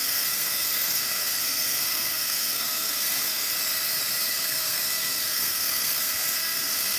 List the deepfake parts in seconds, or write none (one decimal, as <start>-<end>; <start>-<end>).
0.0-3.5; 4.3-7.0